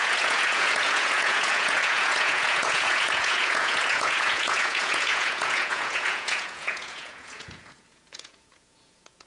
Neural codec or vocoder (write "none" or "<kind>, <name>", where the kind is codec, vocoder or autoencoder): vocoder, Vocos